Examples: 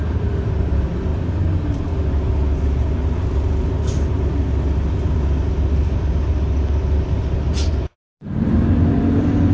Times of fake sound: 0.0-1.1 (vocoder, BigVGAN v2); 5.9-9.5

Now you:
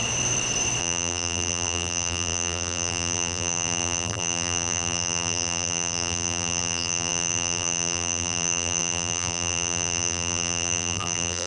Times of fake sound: 0.8-11.5 (vocoder, BigVGAN v2)

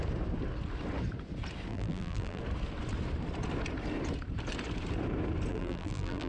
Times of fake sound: 1.7-2.4 (vocoder, BigVGAN v2); 5.5-6.3

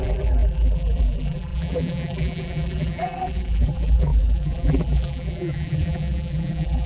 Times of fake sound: 0.0-6.9 (vocoder, BigVGAN v2)